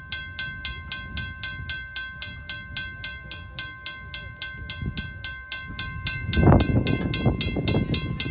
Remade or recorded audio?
recorded